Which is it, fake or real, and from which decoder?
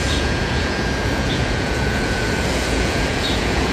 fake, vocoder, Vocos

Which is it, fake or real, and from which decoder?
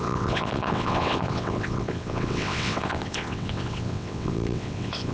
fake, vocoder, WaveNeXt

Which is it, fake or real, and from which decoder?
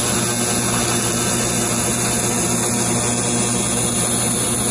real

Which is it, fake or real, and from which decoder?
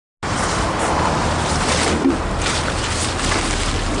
real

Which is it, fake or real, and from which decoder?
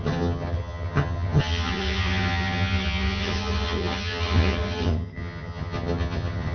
fake, vocoder, HiFi-GAN